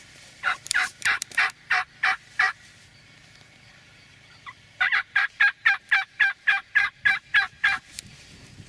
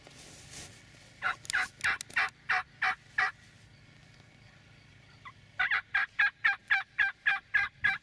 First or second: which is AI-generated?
first